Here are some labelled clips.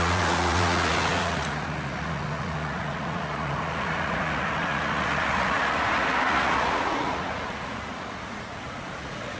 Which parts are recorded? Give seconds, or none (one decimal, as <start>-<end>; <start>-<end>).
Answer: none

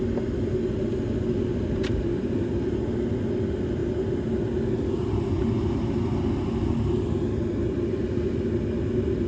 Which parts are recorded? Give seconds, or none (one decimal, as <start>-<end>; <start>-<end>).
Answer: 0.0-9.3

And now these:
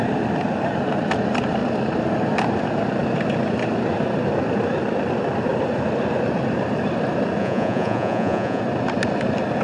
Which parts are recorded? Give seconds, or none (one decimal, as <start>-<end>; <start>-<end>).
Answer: 0.0-7.4; 8.6-9.6

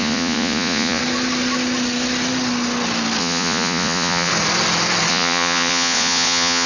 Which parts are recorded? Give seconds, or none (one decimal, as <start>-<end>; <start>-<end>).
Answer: 1.0-3.2; 4.3-5.1

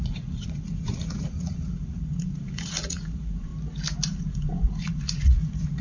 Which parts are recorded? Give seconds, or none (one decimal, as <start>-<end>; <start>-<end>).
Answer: 3.5-4.2